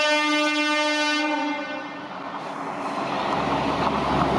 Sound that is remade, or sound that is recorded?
recorded